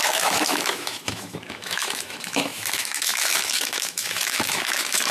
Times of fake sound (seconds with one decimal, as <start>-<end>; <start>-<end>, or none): 0.0-5.1